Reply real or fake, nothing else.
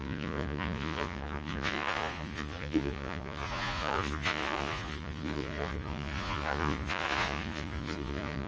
fake